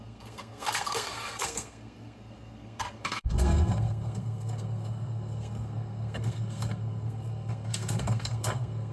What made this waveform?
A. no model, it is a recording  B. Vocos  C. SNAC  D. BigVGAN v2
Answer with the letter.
C